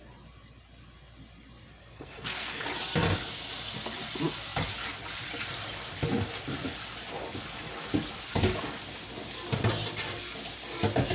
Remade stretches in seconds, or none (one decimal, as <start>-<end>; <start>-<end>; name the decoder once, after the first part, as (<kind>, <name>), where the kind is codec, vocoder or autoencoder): 1.8-2.7 (codec, SNAC)